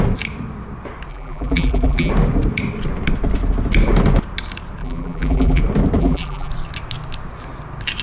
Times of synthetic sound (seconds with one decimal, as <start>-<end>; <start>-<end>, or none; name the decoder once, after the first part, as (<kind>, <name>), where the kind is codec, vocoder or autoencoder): 1.1-2.1 (vocoder, BigVGAN v2); 4.8-5.6; 6.0-6.5